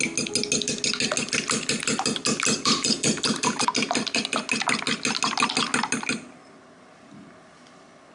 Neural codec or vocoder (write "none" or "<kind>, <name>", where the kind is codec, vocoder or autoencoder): none